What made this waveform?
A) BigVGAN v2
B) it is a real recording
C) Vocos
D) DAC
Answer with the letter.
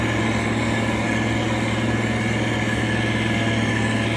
B